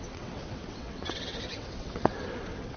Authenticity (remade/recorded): remade